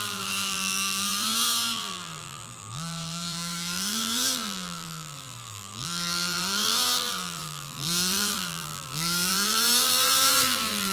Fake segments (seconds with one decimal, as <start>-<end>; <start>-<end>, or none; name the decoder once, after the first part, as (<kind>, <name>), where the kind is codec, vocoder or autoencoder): 0.0-10.9 (vocoder, BigVGAN v2)